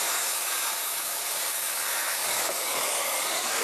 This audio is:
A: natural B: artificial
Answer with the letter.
B